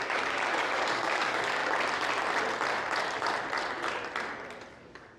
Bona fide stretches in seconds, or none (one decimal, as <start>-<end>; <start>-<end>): 1.6-4.7